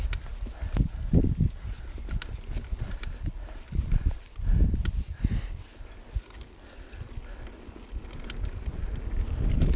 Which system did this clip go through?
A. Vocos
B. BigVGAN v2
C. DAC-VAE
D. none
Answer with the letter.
D